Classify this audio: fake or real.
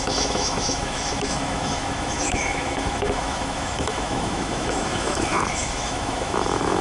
fake